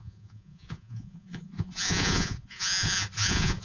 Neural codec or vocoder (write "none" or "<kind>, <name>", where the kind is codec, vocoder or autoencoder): vocoder, Vocos